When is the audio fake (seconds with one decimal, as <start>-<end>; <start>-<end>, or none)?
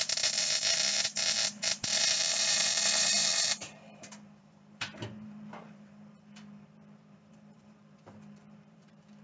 0.0-9.2